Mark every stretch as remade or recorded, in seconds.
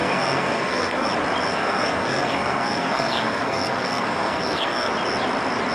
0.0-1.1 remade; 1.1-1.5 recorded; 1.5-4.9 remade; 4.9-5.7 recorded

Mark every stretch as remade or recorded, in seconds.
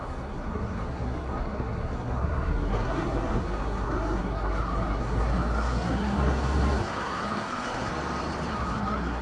0.0-7.9 remade; 7.9-8.5 recorded; 8.5-9.2 remade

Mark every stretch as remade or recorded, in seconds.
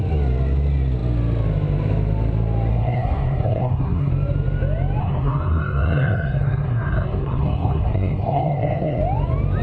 0.0-2.7 recorded; 2.7-4.1 remade; 4.1-5.0 recorded; 5.0-9.0 remade; 9.0-9.6 recorded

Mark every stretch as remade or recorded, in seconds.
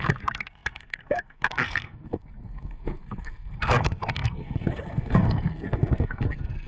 0.0-6.7 remade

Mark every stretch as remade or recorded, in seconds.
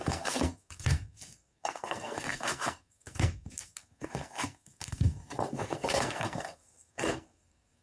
0.0-7.8 remade